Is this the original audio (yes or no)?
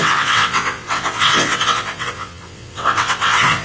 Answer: no